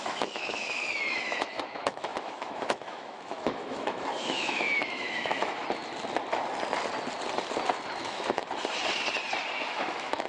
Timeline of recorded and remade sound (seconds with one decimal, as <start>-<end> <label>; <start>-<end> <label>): 0.0-5.6 remade; 5.6-8.0 recorded; 8.0-8.4 remade; 8.4-9.6 recorded; 9.6-10.3 remade